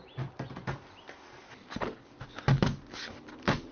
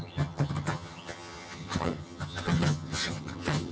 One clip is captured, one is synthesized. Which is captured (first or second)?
first